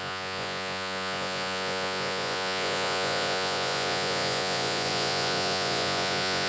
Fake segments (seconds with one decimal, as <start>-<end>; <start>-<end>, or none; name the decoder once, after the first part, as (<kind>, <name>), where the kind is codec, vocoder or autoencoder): 0.0-6.5 (vocoder, Vocos)